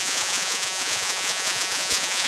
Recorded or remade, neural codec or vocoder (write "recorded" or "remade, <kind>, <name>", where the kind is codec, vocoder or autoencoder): remade, vocoder, Vocos